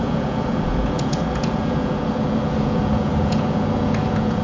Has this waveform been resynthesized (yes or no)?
yes